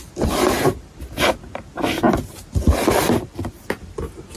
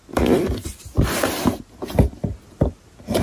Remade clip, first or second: first